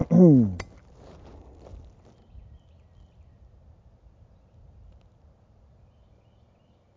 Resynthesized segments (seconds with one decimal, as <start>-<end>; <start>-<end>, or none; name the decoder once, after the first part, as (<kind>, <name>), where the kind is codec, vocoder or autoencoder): none